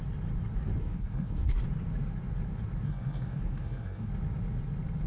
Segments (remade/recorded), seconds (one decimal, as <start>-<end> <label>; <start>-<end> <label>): 0.0-0.8 recorded; 0.8-1.6 remade; 1.6-2.8 recorded; 2.8-4.1 remade; 4.1-5.1 recorded